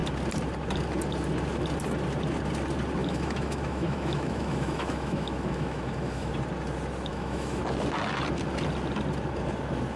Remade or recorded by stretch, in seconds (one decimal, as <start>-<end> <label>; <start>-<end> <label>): 0.0-3.0 recorded; 3.0-6.3 remade; 6.3-7.1 recorded; 7.1-7.6 remade; 7.6-10.0 recorded